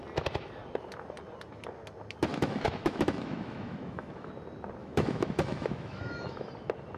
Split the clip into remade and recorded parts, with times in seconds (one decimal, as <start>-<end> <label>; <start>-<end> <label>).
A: 0.0-2.3 recorded; 2.3-4.3 remade; 4.3-4.8 recorded; 4.8-6.5 remade; 6.5-7.0 recorded